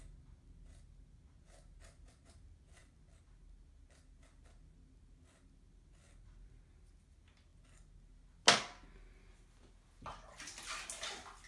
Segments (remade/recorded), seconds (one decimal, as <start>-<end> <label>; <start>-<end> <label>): 0.0-11.5 recorded

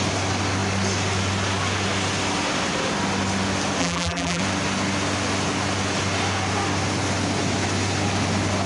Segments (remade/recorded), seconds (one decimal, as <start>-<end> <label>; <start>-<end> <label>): 0.0-3.8 recorded; 3.8-4.4 remade; 4.4-8.7 recorded

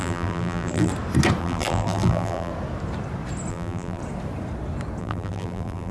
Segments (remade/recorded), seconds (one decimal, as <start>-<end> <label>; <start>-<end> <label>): 0.0-0.9 remade; 0.9-1.4 recorded; 1.4-2.5 remade; 2.5-3.5 recorded; 3.5-4.0 remade; 4.0-5.0 recorded; 5.0-5.9 remade

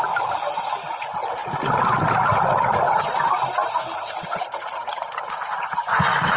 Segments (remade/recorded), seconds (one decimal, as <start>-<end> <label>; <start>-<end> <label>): 0.0-6.4 recorded

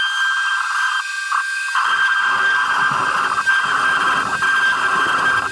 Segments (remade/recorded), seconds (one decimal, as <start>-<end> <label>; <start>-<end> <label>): 0.0-3.5 recorded; 3.5-4.1 remade; 4.1-5.5 recorded

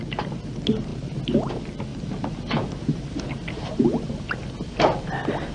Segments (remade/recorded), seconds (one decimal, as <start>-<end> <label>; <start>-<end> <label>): 0.0-1.9 recorded; 1.9-4.2 remade; 4.2-5.5 recorded